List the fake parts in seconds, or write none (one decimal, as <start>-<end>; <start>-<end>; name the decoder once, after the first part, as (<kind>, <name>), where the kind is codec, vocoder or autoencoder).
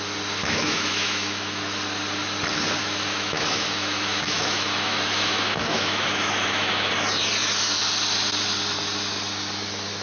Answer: 0.4-1.6 (autoencoder, DAC-VAE); 2.8-6.9